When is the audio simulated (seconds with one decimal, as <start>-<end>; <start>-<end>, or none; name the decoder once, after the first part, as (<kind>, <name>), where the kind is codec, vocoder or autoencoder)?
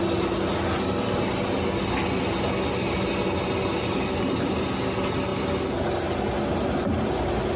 none